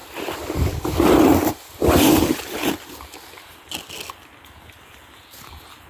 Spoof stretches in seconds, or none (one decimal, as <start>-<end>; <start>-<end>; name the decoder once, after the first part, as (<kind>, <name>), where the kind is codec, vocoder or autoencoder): none